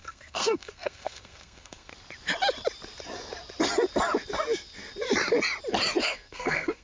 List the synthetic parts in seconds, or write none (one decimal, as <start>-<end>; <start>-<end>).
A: 0.0-1.9; 6.0-6.8